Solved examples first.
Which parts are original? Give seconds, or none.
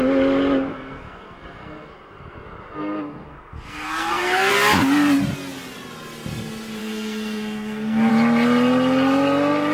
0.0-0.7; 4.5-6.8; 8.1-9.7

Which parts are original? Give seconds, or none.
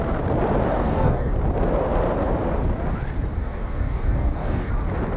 0.0-0.7; 1.3-3.4; 4.7-5.2